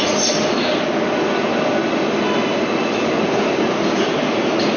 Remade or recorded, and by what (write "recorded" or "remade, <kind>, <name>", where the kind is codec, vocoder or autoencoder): recorded